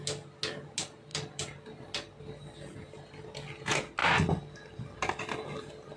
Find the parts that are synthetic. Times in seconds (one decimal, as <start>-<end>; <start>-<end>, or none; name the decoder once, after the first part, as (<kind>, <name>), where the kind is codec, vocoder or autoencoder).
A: 1.1-2.2 (vocoder, BigVGAN v2)